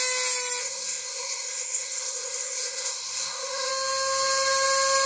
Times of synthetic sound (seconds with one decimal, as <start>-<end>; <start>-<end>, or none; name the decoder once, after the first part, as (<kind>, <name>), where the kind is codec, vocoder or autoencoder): 0.6-3.7 (codec, SNAC)